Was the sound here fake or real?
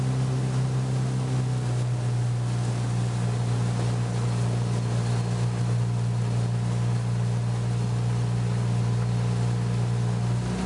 real